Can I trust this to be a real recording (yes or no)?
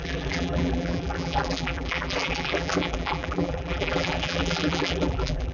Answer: no